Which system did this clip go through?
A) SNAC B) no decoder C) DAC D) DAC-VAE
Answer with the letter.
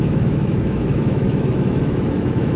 D